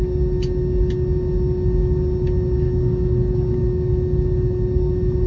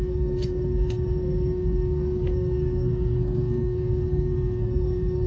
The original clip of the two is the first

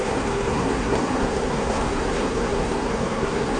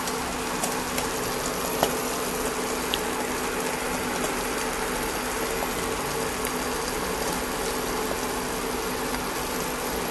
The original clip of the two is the second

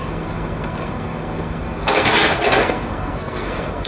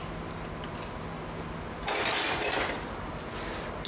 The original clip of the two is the second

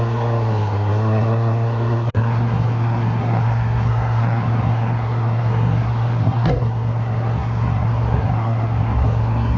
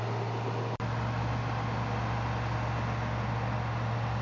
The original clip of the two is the second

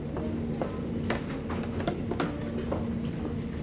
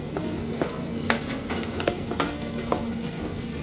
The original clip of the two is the first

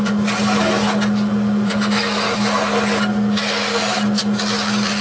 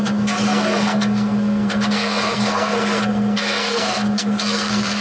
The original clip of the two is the first